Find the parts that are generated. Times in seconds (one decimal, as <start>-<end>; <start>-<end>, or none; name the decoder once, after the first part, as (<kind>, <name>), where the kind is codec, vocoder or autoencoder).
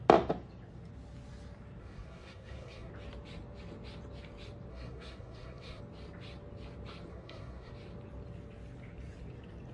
1.8-2.9 (codec, SNAC); 4.7-5.8; 7.1-7.7